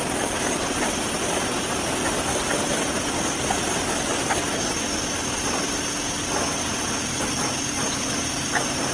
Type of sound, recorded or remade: recorded